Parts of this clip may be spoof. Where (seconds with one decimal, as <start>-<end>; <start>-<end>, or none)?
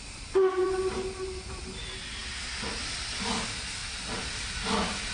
none